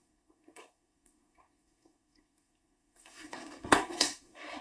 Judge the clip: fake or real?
fake